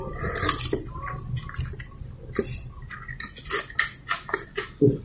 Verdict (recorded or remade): recorded